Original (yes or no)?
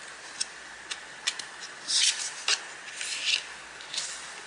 yes